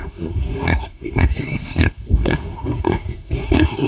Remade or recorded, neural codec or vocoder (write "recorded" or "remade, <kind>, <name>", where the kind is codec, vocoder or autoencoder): remade, codec, SNAC